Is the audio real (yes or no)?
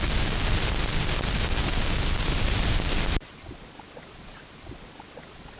yes